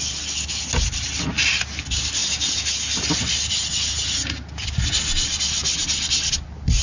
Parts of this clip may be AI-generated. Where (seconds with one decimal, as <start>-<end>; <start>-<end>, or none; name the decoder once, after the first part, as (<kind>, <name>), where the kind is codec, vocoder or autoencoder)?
none